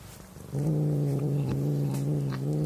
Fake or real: real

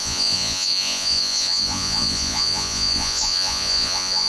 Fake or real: fake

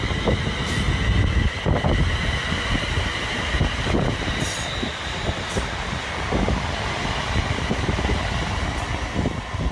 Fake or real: real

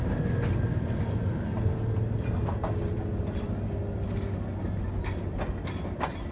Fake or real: real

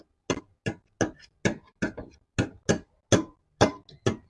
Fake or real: real